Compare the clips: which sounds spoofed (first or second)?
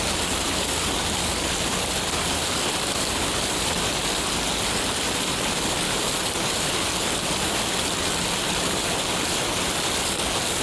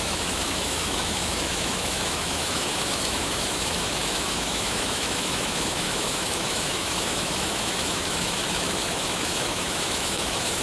second